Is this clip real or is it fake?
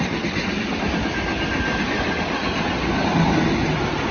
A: real